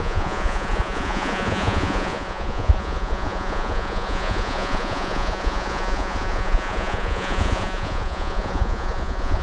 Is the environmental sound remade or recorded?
remade